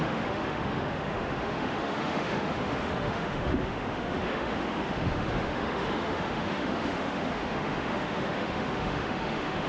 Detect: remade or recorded remade